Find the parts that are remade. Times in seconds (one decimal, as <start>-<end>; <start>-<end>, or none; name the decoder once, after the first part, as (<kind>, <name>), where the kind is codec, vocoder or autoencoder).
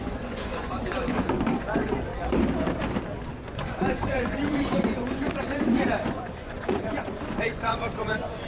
0.0-2.1 (vocoder, Vocos); 3.3-8.5